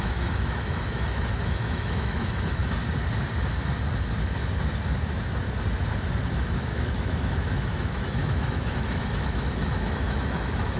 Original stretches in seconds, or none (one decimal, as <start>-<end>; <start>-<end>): 2.6-6.3